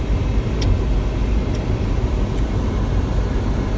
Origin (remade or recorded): recorded